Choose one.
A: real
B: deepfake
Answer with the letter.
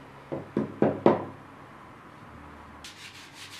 A